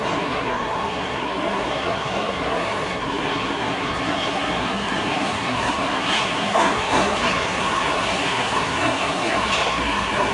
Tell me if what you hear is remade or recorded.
remade